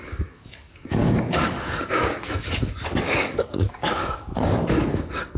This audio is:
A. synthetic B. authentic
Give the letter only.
A